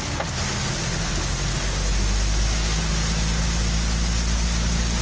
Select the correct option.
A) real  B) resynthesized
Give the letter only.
A